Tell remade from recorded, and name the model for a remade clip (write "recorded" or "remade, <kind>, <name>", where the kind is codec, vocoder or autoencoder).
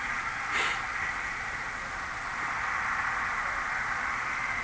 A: recorded